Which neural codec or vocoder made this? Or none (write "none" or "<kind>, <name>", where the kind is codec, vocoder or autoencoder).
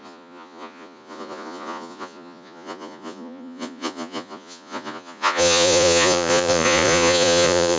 vocoder, Vocos